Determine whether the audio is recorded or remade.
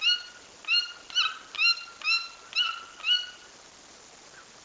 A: recorded